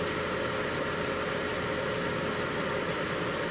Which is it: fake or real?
real